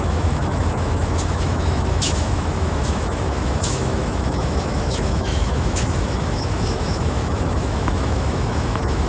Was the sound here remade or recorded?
remade